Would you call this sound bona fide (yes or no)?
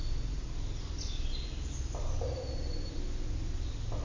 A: yes